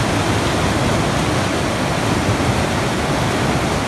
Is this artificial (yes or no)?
no